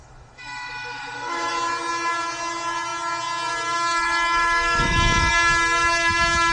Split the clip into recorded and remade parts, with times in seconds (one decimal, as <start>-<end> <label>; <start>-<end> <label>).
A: 0.0-1.5 remade; 1.5-3.9 recorded; 3.9-5.3 remade; 5.3-6.5 recorded